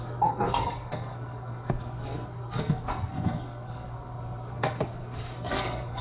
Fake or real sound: fake